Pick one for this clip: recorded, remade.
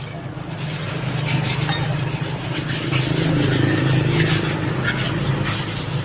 recorded